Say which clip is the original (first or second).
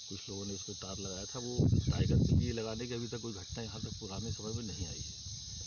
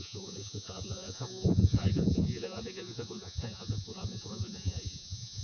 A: first